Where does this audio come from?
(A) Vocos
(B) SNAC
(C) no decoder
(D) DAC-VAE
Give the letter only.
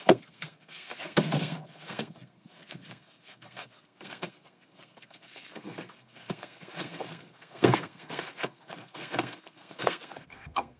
B